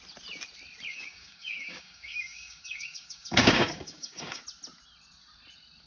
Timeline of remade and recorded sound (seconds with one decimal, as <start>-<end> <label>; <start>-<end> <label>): 0.0-0.9 recorded; 0.9-4.4 remade; 4.4-5.9 recorded